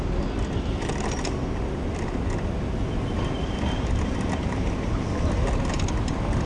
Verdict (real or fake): real